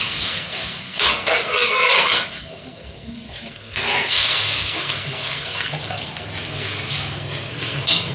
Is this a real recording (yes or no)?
no